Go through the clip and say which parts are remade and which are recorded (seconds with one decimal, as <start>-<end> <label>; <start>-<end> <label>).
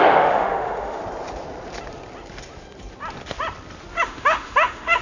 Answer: 0.0-1.0 remade; 1.0-4.0 recorded; 4.0-5.0 remade